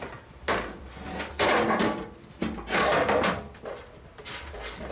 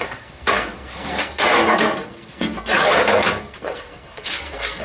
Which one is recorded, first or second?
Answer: first